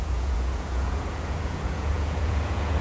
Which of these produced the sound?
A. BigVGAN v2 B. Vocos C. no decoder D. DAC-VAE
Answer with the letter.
B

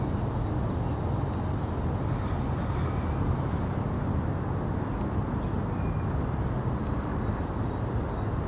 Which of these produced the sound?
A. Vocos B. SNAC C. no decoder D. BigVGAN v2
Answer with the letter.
C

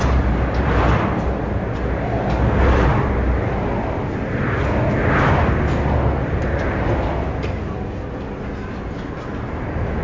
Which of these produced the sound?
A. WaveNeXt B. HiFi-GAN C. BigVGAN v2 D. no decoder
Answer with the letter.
D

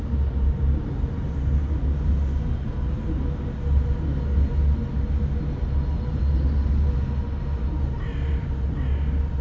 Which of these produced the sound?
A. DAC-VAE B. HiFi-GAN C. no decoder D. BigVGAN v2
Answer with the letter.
C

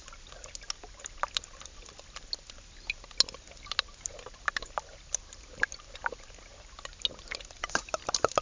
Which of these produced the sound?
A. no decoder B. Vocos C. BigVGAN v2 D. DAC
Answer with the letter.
A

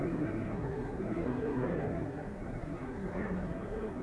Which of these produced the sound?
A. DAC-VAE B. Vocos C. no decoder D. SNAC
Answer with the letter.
D